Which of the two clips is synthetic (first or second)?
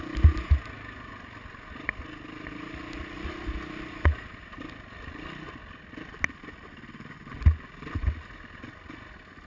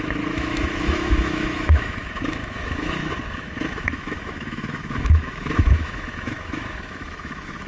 second